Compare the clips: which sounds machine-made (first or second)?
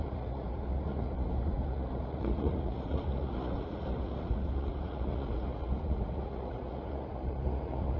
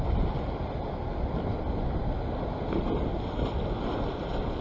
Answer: first